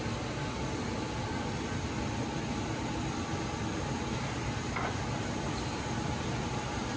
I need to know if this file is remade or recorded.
recorded